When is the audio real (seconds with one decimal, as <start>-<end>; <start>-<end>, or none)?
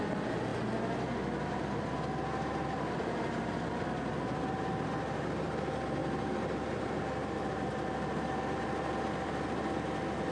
0.0-10.3